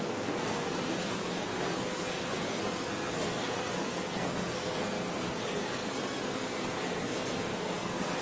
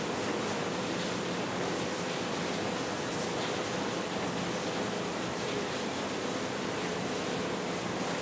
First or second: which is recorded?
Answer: second